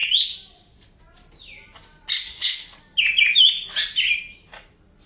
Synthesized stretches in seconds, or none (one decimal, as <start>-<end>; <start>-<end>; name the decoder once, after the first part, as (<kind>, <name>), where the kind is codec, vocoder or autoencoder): 2.3-2.8 (codec, HILCodec)

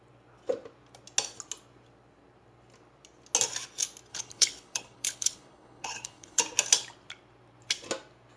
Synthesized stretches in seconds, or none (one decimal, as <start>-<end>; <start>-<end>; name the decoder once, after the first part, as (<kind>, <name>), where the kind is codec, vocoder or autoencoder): 4.1-6.4 (codec, HILCodec)